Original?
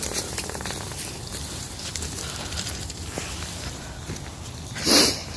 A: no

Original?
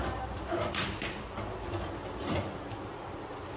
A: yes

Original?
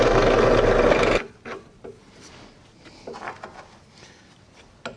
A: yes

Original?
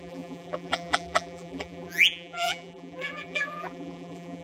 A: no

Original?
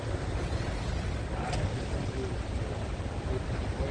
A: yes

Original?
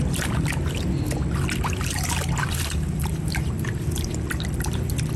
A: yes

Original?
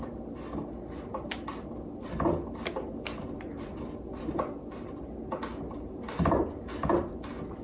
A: yes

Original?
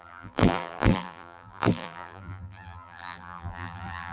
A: no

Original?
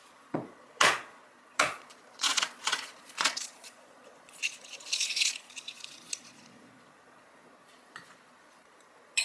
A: no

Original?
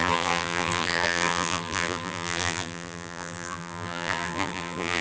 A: no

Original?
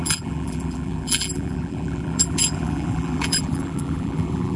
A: no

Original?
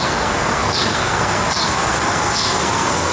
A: no